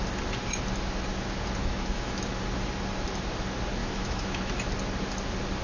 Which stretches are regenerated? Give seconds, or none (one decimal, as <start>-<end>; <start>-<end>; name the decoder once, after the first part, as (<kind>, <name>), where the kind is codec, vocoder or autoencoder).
1.6-2.2 (autoencoder, DAC-VAE); 3.8-4.6